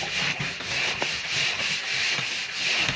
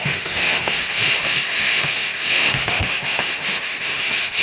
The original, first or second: first